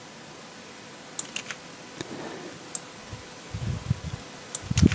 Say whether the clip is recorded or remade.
recorded